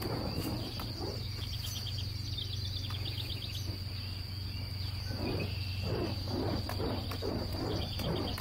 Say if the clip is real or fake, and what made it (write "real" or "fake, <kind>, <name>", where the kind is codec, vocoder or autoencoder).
real